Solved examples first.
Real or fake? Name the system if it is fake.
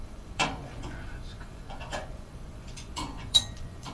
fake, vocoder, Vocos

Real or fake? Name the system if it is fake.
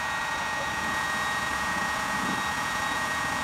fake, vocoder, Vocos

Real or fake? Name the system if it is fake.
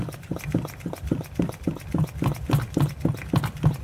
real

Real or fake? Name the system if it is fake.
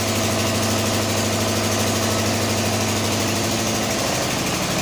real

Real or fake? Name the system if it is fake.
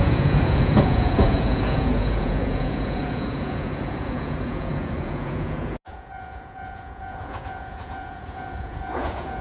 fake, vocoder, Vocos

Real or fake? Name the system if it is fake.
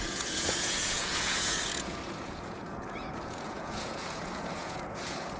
fake, vocoder, Vocos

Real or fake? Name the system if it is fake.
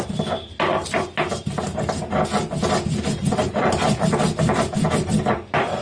real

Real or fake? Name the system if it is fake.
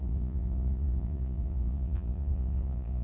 fake, vocoder, Vocos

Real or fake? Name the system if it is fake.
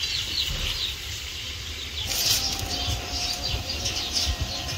real